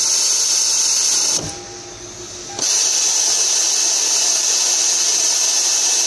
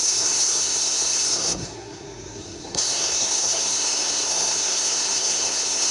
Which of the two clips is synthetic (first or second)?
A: second